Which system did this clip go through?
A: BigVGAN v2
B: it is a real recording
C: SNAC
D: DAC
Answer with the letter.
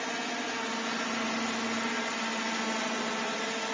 B